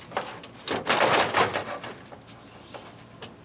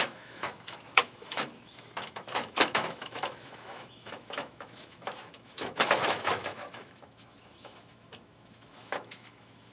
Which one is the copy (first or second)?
second